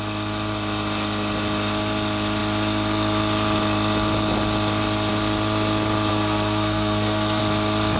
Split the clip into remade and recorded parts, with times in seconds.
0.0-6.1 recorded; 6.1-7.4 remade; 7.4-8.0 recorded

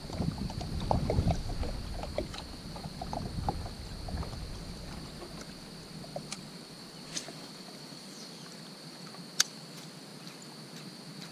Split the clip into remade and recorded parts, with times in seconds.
0.0-11.3 recorded

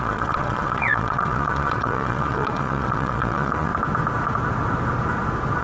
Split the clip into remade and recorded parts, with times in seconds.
0.0-3.7 remade; 3.7-5.6 recorded

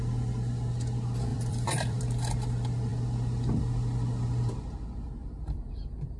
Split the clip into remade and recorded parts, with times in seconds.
0.0-1.3 recorded; 1.3-2.0 remade; 2.0-6.2 recorded

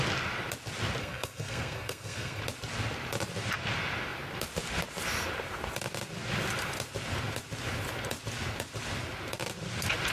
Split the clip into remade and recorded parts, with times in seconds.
0.0-1.0 recorded; 1.0-2.4 remade; 2.4-10.1 recorded

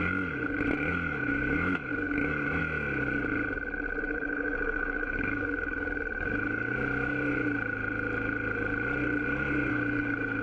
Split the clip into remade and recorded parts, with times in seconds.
0.0-2.6 remade; 2.6-4.0 recorded; 4.0-7.8 remade; 7.8-9.7 recorded; 9.7-10.4 remade

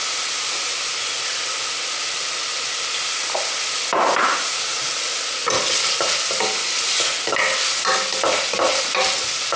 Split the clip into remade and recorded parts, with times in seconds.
0.0-9.6 recorded

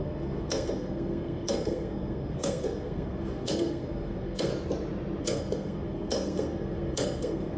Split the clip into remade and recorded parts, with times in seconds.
0.0-4.5 remade; 4.5-5.2 recorded; 5.2-7.6 remade